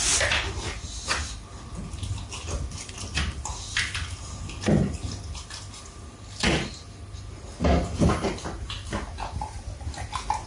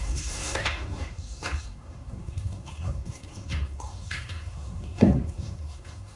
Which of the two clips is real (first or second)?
first